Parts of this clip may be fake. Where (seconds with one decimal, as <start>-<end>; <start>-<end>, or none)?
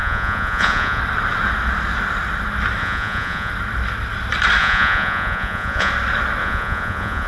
0.0-1.0; 2.8-3.5; 4.6-5.9; 6.4-7.3